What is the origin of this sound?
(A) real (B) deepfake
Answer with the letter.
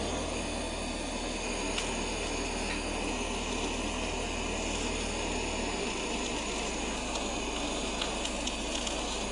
A